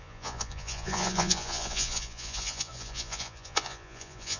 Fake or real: fake